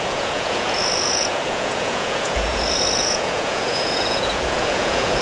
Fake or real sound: fake